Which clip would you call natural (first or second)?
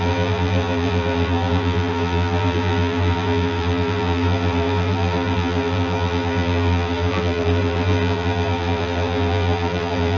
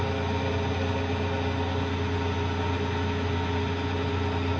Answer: second